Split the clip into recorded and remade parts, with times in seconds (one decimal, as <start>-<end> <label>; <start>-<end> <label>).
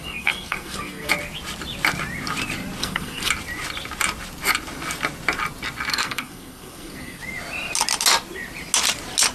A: 0.0-1.1 remade; 1.1-2.8 recorded; 2.8-3.3 remade; 3.3-5.9 recorded; 5.9-7.2 remade; 7.2-9.3 recorded